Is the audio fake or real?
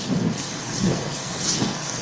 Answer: fake